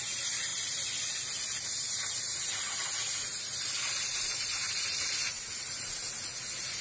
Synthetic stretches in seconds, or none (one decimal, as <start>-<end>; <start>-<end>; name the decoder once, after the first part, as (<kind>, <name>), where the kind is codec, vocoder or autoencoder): none